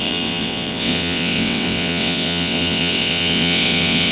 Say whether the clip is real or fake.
fake